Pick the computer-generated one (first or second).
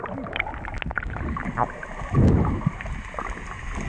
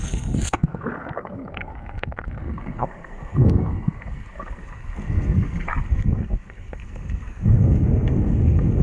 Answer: second